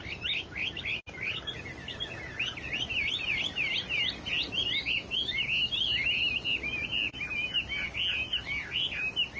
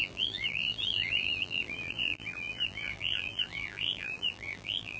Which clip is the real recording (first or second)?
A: first